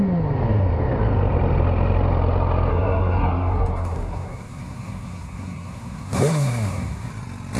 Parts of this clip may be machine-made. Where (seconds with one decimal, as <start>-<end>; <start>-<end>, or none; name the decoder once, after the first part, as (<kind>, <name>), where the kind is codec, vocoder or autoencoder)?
2.7-7.1 (codec, SNAC)